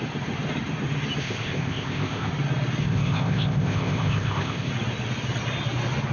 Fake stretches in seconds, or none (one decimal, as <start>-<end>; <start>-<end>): 1.2-2.3; 2.8-4.7